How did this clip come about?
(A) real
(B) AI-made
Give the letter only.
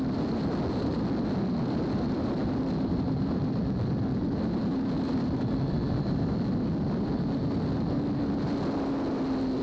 A